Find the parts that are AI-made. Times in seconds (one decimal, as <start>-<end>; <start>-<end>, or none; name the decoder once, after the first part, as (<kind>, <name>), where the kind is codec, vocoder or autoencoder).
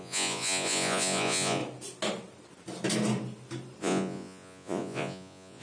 0.0-1.6 (vocoder, Vocos); 3.8-5.6